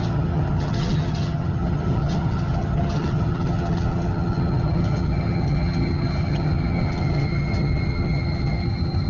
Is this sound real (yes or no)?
no